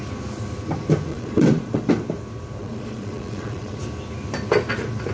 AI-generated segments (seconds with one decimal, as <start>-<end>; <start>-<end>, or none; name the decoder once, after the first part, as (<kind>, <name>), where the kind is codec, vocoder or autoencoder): 1.1-1.9 (vocoder, Vocos); 2.6-3.8